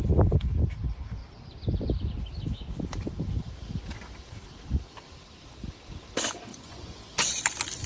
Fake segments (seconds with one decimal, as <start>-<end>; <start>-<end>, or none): 6.5-7.4